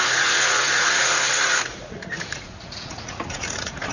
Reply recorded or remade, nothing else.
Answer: remade